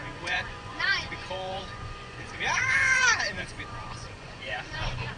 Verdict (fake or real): fake